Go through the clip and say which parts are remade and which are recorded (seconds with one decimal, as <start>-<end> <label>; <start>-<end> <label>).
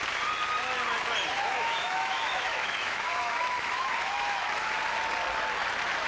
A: 0.0-1.3 recorded; 1.3-4.8 remade; 4.8-6.1 recorded